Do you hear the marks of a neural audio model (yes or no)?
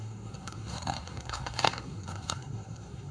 yes